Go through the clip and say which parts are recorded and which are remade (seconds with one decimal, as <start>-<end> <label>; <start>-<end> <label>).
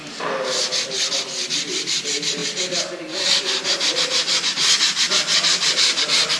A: 0.0-6.4 recorded